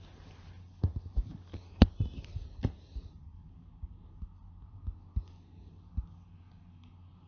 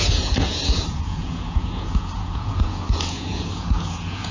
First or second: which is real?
first